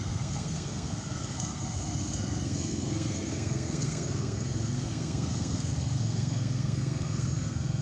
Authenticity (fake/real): fake